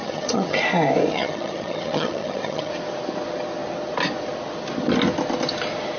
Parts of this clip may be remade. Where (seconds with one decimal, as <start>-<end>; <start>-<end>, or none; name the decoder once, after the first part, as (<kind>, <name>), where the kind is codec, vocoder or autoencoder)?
0.0-0.6 (vocoder, HiFi-GAN); 1.1-2.7